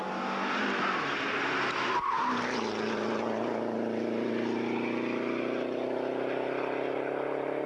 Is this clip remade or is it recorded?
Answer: recorded